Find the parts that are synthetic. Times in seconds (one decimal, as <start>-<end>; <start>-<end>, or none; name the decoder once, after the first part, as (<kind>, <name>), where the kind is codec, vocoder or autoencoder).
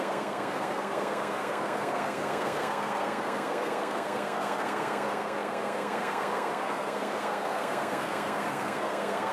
0.0-9.3 (codec, SNAC)